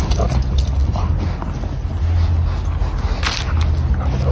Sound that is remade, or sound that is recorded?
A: recorded